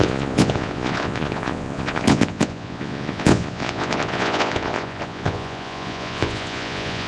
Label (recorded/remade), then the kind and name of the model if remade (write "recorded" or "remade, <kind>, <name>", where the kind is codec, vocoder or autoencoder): remade, vocoder, Vocos